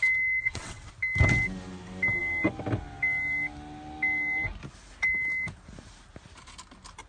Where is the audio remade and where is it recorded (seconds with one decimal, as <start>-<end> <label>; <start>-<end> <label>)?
0.0-0.4 recorded; 0.4-0.9 remade; 0.9-7.1 recorded